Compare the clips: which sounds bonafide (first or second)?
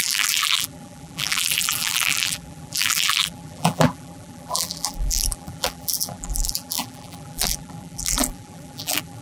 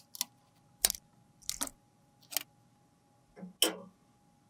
second